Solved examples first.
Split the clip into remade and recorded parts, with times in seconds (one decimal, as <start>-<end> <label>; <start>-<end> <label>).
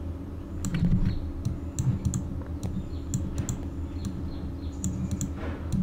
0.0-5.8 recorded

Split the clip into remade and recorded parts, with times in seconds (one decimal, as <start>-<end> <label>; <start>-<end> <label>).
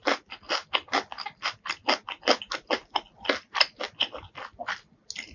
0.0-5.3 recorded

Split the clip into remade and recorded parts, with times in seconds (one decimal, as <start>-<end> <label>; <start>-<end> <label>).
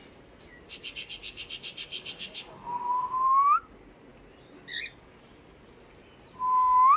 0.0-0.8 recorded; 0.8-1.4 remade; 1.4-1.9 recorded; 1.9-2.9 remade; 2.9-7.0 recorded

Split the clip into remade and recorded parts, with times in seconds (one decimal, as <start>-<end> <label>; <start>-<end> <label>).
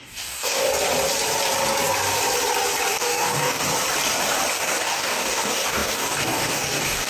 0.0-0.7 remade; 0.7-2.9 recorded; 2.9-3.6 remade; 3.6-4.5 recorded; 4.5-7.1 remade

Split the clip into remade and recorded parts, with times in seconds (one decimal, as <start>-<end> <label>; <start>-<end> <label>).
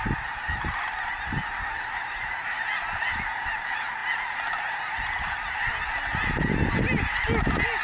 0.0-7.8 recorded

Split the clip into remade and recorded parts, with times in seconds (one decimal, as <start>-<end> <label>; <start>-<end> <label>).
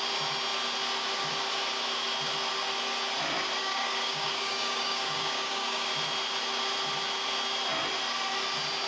0.0-3.6 recorded; 3.6-5.9 remade; 5.9-8.9 recorded